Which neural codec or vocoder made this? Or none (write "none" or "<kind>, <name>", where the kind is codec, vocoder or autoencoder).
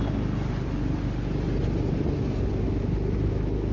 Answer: none